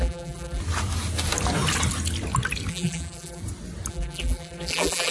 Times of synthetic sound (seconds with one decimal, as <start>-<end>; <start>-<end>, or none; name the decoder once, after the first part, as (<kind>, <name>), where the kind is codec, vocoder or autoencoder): 0.0-0.6 (vocoder, BigVGAN v2); 2.7-3.4; 3.9-5.1